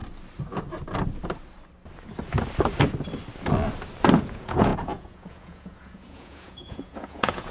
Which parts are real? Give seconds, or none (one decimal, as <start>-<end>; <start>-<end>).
0.0-4.2